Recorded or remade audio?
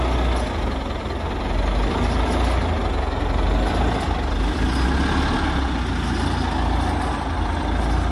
recorded